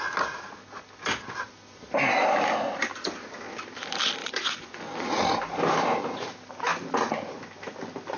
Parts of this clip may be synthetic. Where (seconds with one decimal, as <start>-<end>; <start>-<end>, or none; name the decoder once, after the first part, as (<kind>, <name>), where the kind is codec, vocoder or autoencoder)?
4.2-5.1 (vocoder, Vocos)